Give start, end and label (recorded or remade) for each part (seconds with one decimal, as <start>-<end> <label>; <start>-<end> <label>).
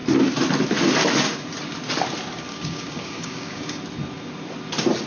0.0-2.5 recorded; 2.5-3.8 remade; 3.8-5.1 recorded